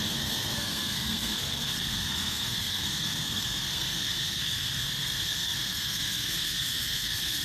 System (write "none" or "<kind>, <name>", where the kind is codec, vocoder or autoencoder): codec, SNAC